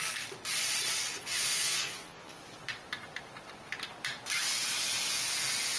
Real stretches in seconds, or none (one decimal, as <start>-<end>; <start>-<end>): 0.0-1.2; 2.4-5.8